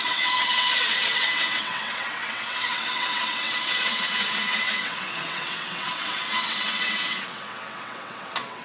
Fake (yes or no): yes